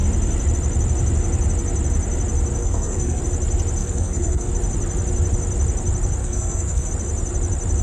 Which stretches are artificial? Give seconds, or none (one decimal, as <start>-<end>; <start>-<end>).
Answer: 2.6-3.2; 3.8-4.5; 6.2-6.9